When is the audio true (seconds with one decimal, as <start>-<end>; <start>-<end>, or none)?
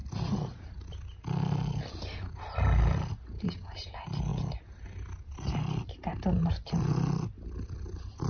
0.0-8.3